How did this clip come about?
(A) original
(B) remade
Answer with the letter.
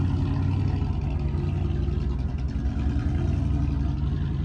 A